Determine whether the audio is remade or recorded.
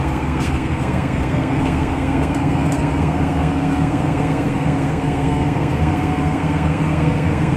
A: remade